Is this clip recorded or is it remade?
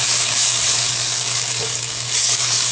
remade